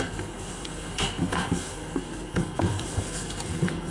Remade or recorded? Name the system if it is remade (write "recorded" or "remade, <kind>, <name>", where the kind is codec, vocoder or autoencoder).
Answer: remade, codec, SNAC